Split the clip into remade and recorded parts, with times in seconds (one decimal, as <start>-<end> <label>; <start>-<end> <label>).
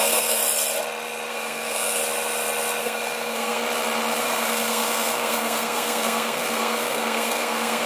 0.0-0.4 remade; 0.4-1.3 recorded; 1.3-2.0 remade; 2.0-2.8 recorded; 2.8-3.6 remade; 3.6-4.2 recorded; 4.2-7.9 remade